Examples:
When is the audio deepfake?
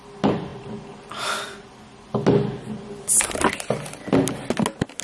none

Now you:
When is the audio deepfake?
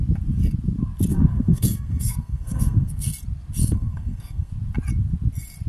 1.1-3.1 (codec, SNAC); 3.6-4.5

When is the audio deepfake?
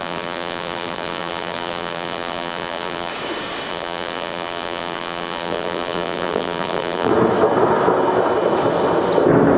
0.0-3.1 (vocoder, BigVGAN v2); 3.7-7.1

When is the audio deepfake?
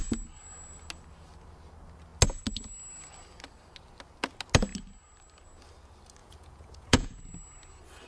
6.2-7.2 (vocoder, Vocos)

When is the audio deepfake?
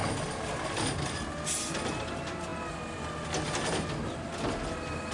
none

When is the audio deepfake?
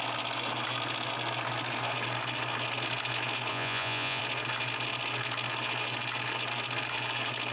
3.5-4.2 (vocoder, Vocos)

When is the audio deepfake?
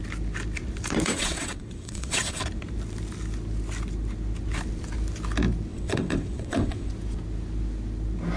1.1-2.4 (vocoder, WaveNeXt); 5.7-6.9